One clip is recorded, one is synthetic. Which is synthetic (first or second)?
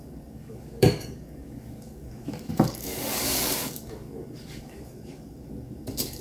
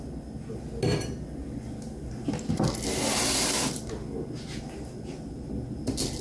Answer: first